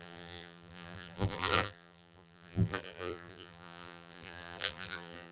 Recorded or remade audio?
remade